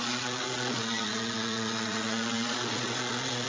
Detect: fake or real fake